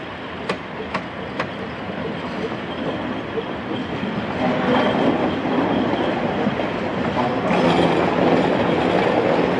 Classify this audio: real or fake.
real